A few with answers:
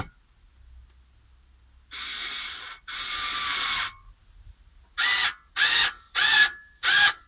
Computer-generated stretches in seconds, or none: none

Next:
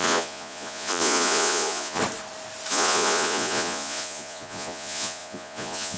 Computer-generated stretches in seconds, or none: 0.0-2.0 (vocoder, Vocos); 2.7-6.0

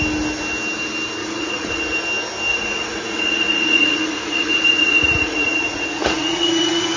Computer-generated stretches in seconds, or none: 1.2-1.8 (vocoder, Vocos); 2.5-7.0

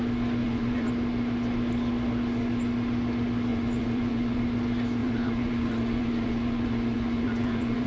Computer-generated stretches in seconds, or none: 0.4-0.9 (vocoder, Vocos); 3.5-4.4; 5.0-7.9

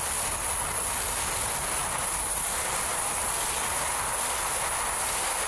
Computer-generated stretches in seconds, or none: none

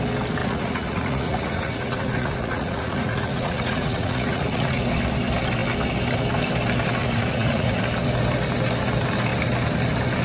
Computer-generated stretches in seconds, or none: 0.4-4.8 (vocoder, Vocos); 7.0-7.8